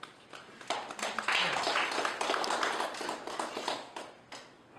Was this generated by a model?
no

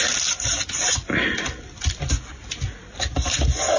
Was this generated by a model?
no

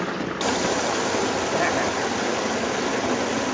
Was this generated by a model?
no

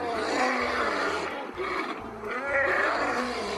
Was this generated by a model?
no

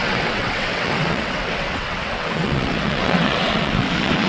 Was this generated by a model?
yes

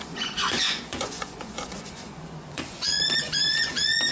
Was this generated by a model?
yes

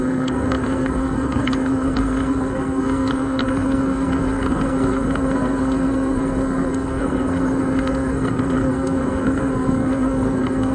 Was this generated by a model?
yes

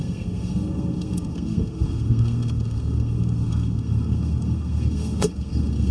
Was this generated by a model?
yes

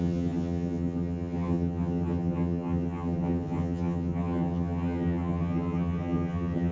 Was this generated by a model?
yes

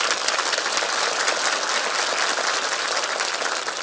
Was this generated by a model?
no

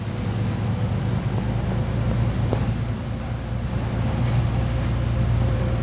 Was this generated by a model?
no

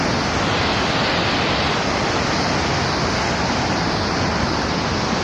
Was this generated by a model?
no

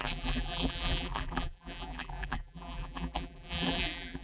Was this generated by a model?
yes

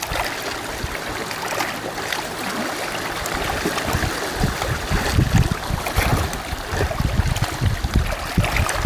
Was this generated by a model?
no